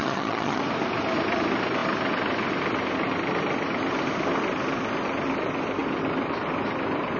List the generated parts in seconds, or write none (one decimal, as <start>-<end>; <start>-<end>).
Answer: 0.0-0.6